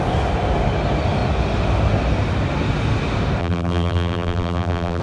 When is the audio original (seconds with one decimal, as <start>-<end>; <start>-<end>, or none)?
0.0-3.4